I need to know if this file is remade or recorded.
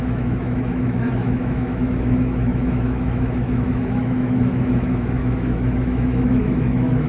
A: remade